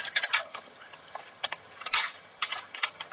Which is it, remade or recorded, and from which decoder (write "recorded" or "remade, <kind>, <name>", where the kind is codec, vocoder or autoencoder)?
remade, vocoder, HiFi-GAN